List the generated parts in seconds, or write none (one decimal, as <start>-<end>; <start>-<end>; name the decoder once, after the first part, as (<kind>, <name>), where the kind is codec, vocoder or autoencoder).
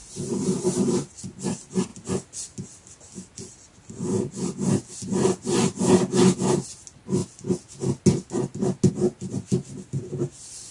none